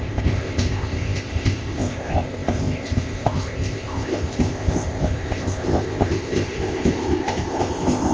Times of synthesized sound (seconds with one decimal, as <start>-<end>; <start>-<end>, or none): 0.0-8.1